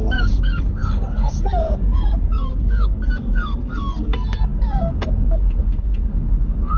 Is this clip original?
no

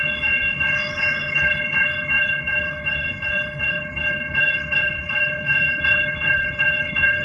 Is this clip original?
no